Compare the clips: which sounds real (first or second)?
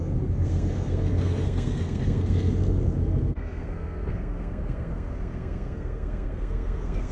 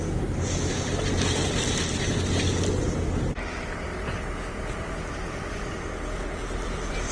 second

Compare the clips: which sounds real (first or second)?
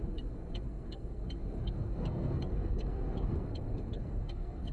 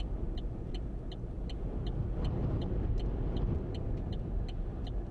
second